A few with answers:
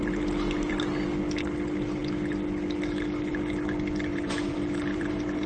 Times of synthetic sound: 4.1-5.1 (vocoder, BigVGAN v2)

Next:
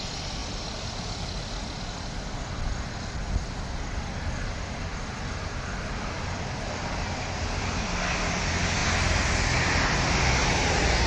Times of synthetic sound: none

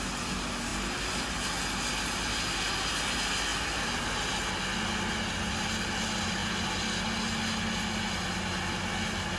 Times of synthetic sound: 3.5-4.0 (vocoder, BigVGAN v2)

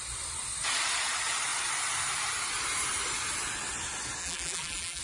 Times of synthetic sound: 4.2-5.0 (vocoder, BigVGAN v2)

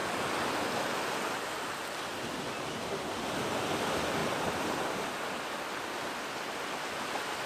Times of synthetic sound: none

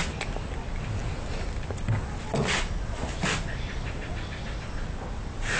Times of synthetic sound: 1.0-4.1 (vocoder, BigVGAN v2)